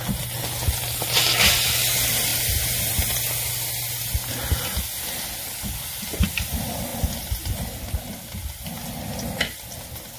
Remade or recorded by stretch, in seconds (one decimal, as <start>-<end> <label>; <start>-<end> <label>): 0.0-10.2 recorded